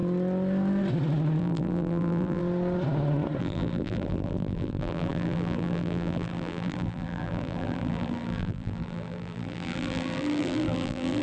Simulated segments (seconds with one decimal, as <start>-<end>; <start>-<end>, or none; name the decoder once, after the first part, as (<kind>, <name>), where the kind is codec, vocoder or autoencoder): 1.4-2.4 (vocoder, BigVGAN v2); 3.4-11.2